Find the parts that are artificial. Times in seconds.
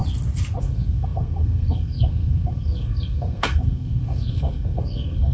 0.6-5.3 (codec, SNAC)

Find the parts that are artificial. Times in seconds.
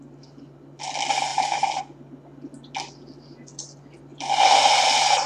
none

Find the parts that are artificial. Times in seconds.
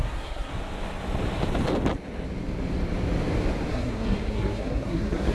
0.0-0.5 (codec, SNAC); 3.7-5.3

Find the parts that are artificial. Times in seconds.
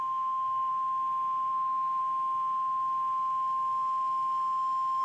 0.0-0.7 (codec, SNAC); 1.5-2.0